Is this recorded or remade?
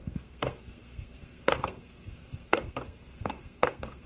remade